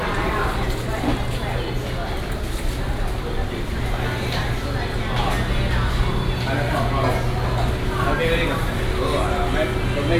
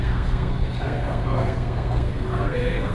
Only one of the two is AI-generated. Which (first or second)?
second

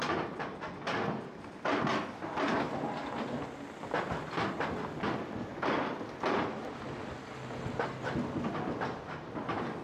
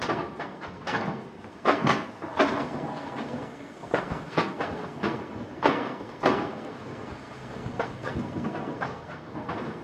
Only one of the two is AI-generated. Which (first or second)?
second